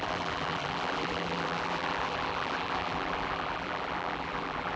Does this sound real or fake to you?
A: fake